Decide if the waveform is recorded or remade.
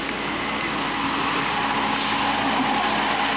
recorded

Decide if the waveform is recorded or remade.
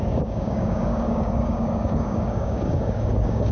remade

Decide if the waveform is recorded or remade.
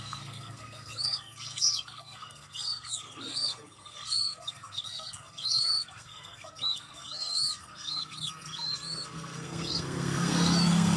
remade